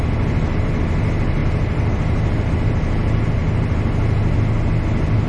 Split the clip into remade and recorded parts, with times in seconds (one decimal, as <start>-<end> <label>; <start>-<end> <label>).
0.0-5.3 recorded